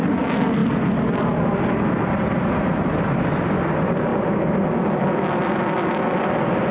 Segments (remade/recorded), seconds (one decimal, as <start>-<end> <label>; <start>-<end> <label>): 0.0-6.7 recorded